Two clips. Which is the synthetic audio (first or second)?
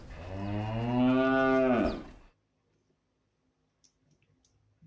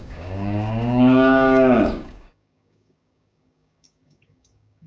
second